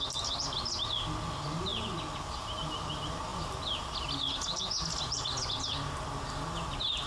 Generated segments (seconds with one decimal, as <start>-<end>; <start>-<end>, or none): none